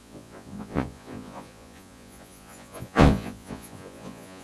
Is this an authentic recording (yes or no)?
no